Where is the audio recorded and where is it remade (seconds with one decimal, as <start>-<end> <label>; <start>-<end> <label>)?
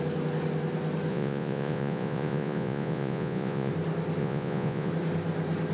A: 0.0-1.1 recorded; 1.1-3.7 remade; 3.7-4.2 recorded; 4.2-4.9 remade; 4.9-5.7 recorded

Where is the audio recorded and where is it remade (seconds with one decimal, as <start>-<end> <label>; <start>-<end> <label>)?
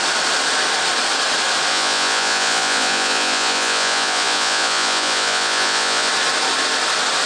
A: 0.0-1.7 recorded; 1.7-6.1 remade; 6.1-7.3 recorded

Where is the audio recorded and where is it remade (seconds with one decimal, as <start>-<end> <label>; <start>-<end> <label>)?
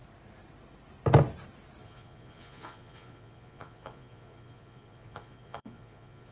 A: 0.0-1.8 recorded; 1.8-6.3 remade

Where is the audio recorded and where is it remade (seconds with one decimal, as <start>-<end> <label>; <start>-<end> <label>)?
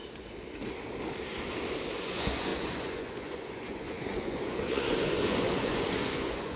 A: 0.0-2.0 recorded; 2.0-6.6 remade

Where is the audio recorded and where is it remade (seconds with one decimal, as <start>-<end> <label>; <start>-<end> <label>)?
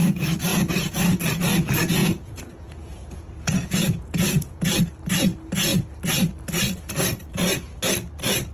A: 0.0-2.0 recorded; 2.0-4.8 remade; 4.8-8.5 recorded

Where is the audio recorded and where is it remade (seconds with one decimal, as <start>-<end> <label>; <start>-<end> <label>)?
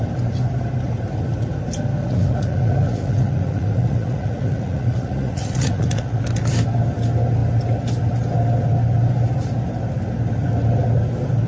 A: 0.0-2.0 recorded; 2.0-6.2 remade; 6.2-11.5 recorded